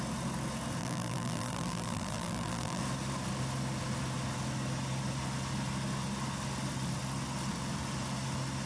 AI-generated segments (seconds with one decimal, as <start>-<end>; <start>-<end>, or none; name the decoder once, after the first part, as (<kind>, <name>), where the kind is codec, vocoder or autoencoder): 0.8-2.8 (vocoder, BigVGAN v2)